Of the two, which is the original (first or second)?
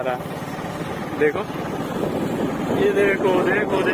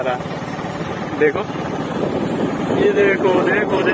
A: first